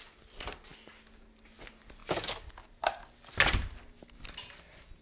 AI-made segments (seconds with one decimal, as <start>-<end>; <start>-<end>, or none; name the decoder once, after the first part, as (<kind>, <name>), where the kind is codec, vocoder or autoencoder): none